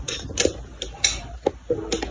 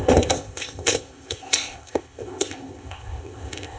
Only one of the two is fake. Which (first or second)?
second